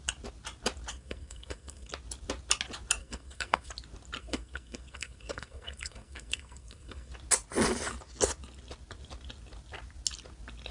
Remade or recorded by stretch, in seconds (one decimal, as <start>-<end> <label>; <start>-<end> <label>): 0.0-0.9 recorded; 0.9-1.9 remade; 1.9-3.0 recorded; 3.0-3.7 remade; 3.7-4.2 recorded; 4.2-7.1 remade; 7.1-10.7 recorded